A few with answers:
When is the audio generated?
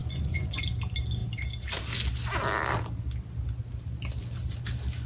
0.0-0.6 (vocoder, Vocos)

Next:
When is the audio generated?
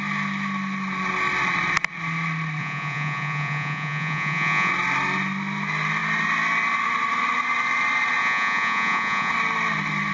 2.6-4.7 (vocoder, Vocos); 8.2-9.3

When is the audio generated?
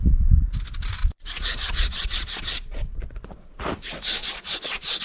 1.0-3.6 (vocoder, Vocos); 4.2-5.0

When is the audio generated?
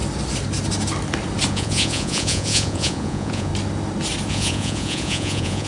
1.5-3.5 (vocoder, Vocos); 4.3-5.7